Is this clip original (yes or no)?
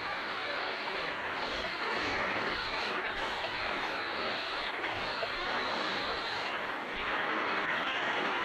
no